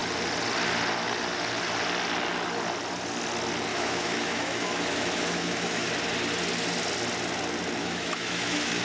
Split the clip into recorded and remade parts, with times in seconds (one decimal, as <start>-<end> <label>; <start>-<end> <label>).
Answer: 0.0-3.7 recorded; 3.7-5.9 remade; 5.9-7.8 recorded; 7.8-8.8 remade